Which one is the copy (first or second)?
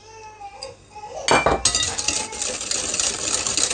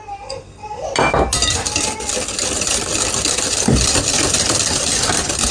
second